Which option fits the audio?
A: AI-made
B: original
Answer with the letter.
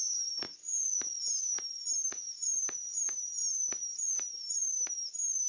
B